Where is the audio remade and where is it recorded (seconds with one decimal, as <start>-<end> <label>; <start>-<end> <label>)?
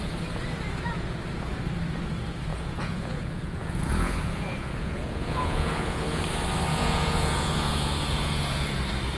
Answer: 0.0-2.5 recorded; 2.5-6.2 remade; 6.2-6.7 recorded; 6.7-8.7 remade; 8.7-9.2 recorded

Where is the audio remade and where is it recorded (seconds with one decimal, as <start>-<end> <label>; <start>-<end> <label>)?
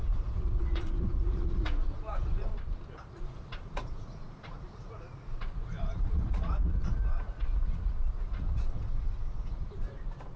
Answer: 0.0-2.5 remade; 2.5-3.2 recorded; 3.2-10.4 remade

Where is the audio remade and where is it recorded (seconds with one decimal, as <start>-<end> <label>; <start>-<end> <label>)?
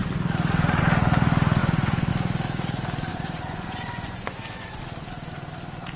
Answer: 0.0-1.6 recorded; 1.6-2.1 remade; 2.1-3.1 recorded; 3.1-4.8 remade; 4.8-6.0 recorded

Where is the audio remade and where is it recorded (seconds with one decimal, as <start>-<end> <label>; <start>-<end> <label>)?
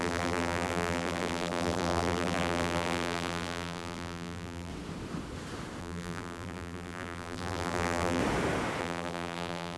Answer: 0.0-4.7 remade; 4.7-5.8 recorded; 5.8-8.2 remade; 8.2-8.8 recorded; 8.8-9.8 remade